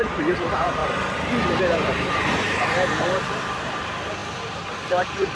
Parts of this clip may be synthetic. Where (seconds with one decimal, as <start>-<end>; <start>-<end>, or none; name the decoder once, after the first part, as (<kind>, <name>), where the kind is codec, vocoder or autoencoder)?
0.0-0.8 (vocoder, BigVGAN v2); 1.6-5.3